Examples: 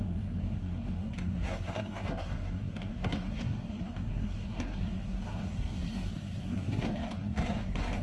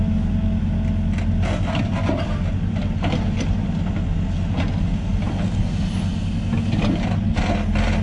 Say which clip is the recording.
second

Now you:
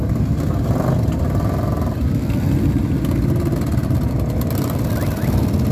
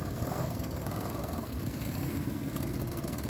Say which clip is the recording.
first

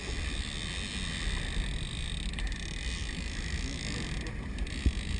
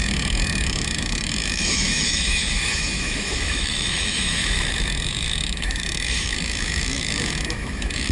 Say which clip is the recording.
first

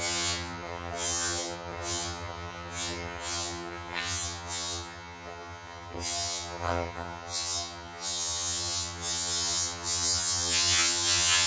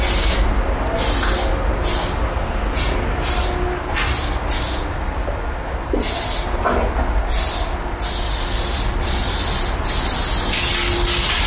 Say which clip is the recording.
second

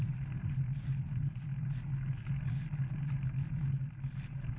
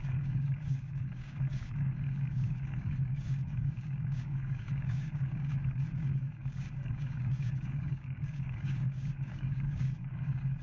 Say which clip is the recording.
first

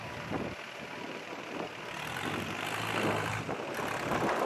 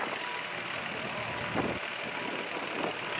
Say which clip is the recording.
second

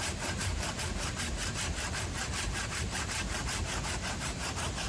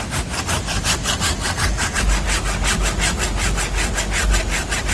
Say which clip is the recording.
second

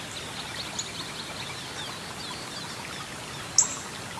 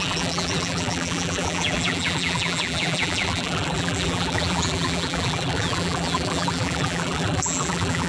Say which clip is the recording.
first